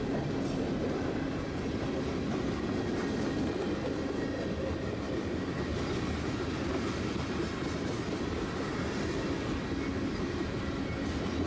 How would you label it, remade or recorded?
recorded